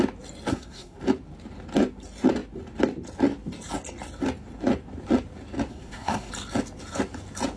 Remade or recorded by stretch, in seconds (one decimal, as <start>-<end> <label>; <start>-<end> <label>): 0.0-0.5 recorded; 0.5-1.0 remade; 1.0-5.7 recorded; 5.7-6.3 remade; 6.3-7.6 recorded